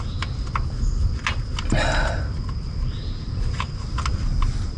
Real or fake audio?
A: real